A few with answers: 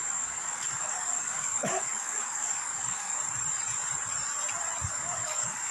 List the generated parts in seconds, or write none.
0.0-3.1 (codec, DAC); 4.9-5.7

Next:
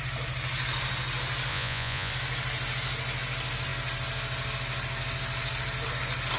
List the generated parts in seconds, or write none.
1.5-2.1 (vocoder, Vocos)

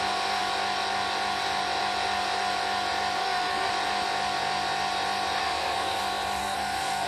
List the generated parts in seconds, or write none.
3.2-3.7 (codec, SNAC); 5.4-6.0; 6.4-7.1

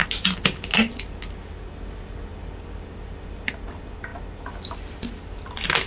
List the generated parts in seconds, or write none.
none